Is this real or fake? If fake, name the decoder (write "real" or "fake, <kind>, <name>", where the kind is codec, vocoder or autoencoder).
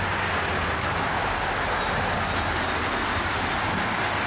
real